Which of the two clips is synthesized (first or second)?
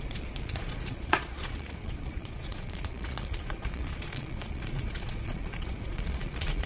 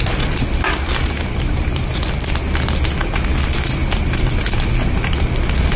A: first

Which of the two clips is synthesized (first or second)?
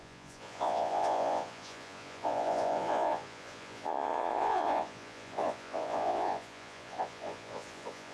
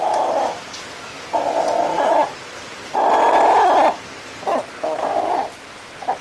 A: first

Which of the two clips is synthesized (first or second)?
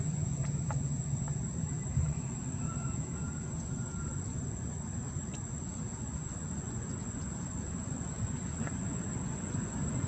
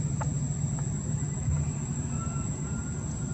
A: first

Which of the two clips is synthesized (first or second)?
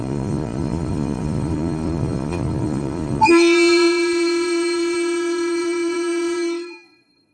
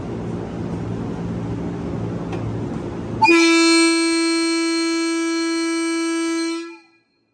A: first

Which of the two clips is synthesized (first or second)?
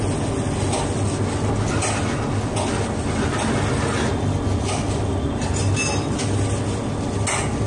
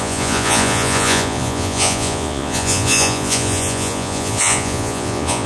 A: second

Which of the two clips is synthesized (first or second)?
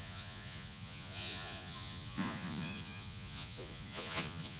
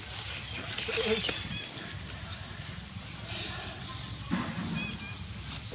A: first